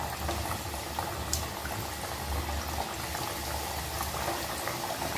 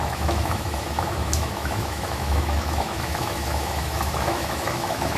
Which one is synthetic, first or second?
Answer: second